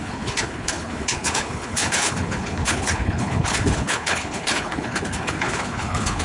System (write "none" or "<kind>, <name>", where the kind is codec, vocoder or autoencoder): codec, HILCodec